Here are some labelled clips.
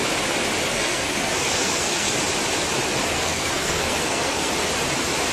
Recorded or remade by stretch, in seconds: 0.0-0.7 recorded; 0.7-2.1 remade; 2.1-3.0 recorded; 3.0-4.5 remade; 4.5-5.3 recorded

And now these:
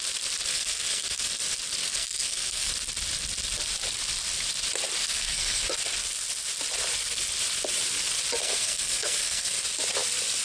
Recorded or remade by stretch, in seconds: 0.0-0.5 recorded; 0.5-1.3 remade; 1.3-1.9 recorded; 1.9-2.7 remade; 2.7-5.0 recorded; 5.0-5.6 remade; 5.6-8.4 recorded; 8.4-9.6 remade; 9.6-10.4 recorded